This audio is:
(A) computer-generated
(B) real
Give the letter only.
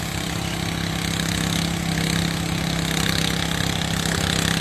B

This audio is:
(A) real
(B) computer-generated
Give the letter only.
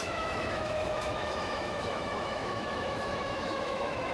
B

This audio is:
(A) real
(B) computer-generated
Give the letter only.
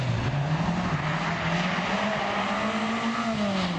A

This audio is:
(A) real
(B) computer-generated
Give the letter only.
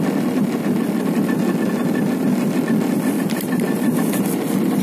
A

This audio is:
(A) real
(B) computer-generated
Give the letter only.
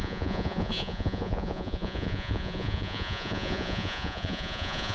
B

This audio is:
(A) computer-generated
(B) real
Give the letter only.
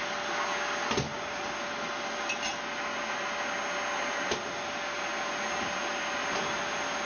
B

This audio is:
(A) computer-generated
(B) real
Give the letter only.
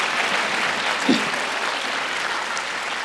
B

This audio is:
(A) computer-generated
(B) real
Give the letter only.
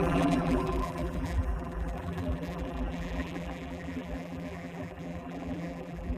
A